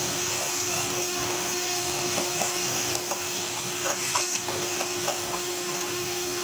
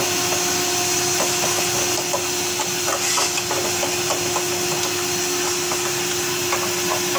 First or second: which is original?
second